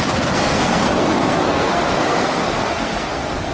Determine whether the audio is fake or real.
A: fake